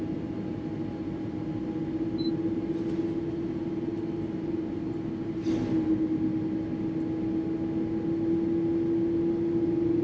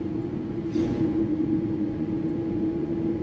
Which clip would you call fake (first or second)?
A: second